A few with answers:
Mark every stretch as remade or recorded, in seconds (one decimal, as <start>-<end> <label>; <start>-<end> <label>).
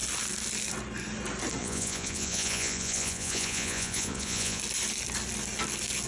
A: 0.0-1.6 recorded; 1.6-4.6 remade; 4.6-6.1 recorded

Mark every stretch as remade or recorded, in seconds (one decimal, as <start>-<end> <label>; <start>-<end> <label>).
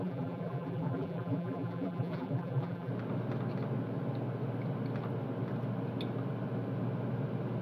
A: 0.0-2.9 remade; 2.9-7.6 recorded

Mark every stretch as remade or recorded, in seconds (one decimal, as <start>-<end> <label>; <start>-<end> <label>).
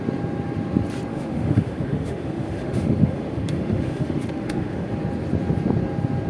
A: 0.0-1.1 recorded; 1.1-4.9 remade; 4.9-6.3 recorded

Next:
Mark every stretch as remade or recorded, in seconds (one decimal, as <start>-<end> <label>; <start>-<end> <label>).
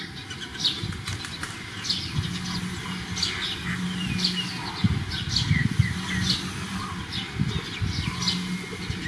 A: 0.0-9.1 recorded